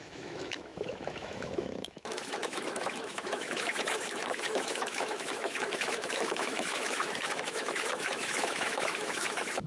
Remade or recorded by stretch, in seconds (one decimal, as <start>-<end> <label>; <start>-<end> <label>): 0.0-9.7 remade